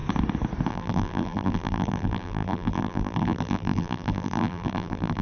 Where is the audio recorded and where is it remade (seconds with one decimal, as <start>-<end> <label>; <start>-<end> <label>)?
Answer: 0.0-0.7 recorded; 0.7-5.2 remade